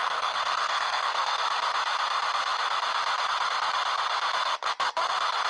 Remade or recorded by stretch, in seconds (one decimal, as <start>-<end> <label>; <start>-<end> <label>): 0.0-1.4 remade; 1.4-5.5 recorded